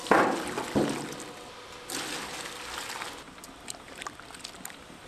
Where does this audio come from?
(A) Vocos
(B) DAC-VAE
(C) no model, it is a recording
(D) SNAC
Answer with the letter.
C